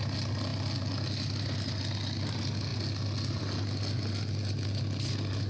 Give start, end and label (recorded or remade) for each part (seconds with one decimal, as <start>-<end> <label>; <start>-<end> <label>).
0.0-5.5 recorded

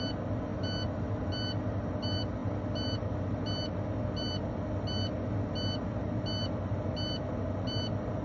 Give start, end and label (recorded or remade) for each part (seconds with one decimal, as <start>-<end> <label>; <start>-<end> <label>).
0.0-8.2 recorded

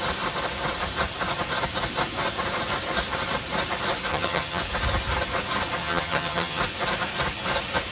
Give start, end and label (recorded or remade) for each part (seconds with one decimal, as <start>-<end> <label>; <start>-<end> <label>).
0.0-4.1 recorded; 4.1-4.6 remade; 4.6-5.8 recorded; 5.8-6.6 remade; 6.6-7.9 recorded

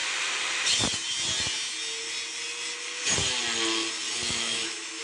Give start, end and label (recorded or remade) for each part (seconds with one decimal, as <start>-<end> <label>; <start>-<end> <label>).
0.0-4.2 recorded; 4.2-5.0 remade

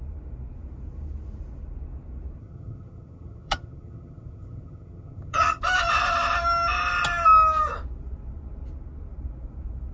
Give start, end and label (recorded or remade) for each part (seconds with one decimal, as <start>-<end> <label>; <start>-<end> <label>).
0.0-2.4 recorded; 2.4-5.6 remade; 5.6-9.9 recorded

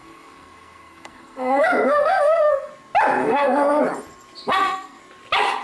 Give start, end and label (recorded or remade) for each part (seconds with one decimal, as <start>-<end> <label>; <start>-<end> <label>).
0.0-2.7 remade; 2.7-3.2 recorded; 3.2-3.8 remade; 3.8-4.5 recorded; 4.5-5.0 remade; 5.0-5.6 recorded

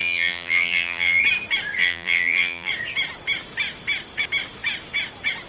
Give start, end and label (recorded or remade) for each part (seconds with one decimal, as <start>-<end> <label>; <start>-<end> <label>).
0.0-1.2 remade; 1.2-1.8 recorded; 1.8-2.7 remade; 2.7-5.5 recorded

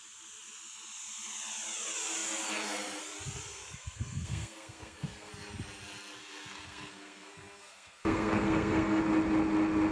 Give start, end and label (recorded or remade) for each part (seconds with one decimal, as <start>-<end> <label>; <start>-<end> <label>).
0.0-3.5 recorded; 3.5-5.3 remade; 5.3-6.2 recorded; 6.2-9.0 remade; 9.0-9.9 recorded